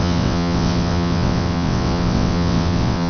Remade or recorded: remade